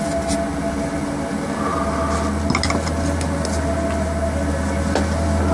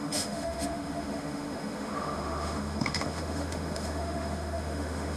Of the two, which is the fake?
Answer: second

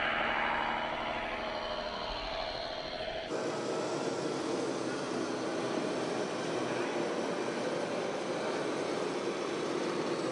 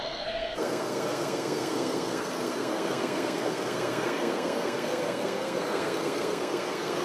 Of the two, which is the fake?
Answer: second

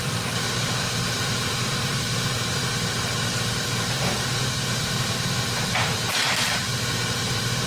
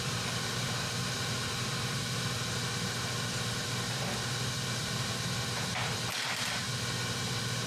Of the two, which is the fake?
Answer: first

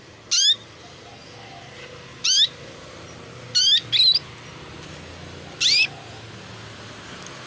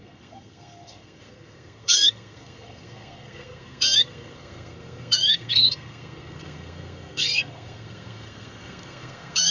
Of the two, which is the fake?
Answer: second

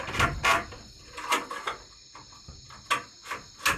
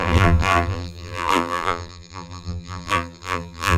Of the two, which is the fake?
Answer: second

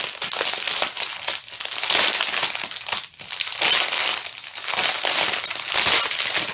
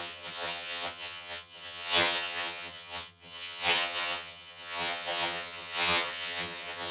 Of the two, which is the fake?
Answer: second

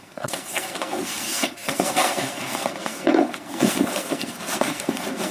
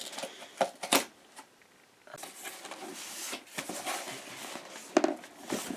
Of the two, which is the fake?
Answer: first